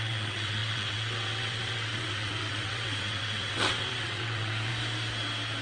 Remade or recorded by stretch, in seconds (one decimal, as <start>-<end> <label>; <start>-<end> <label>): 0.0-4.7 remade; 4.7-5.6 recorded